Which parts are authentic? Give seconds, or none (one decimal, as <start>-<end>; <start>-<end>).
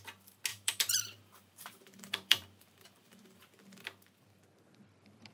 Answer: 0.0-0.5; 3.4-5.3